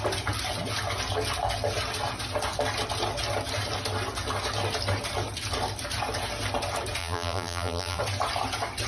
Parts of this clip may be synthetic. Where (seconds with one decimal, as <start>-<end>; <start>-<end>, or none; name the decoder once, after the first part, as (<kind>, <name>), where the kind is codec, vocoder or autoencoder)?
7.0-8.0 (vocoder, BigVGAN v2)